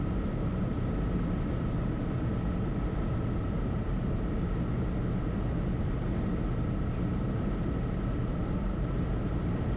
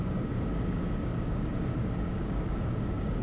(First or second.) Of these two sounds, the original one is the first